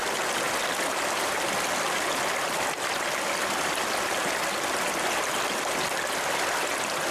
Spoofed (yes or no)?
no